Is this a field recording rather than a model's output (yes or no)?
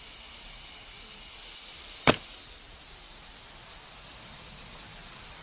yes